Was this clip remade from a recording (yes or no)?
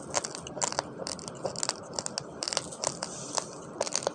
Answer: no